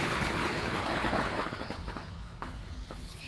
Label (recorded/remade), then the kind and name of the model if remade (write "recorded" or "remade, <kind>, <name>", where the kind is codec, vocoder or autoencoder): remade, codec, HILCodec